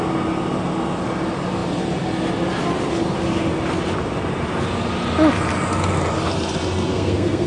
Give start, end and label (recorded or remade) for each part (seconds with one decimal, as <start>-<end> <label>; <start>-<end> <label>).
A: 0.0-6.9 recorded; 6.9-7.5 remade